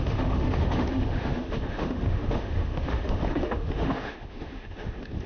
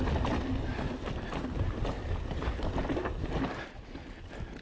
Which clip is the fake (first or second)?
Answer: first